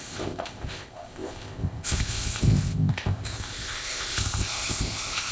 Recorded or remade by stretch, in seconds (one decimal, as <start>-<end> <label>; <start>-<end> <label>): 0.0-5.3 remade